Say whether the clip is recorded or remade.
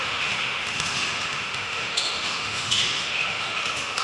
remade